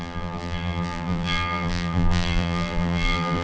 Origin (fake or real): fake